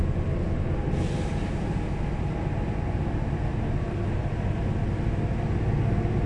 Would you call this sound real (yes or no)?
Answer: yes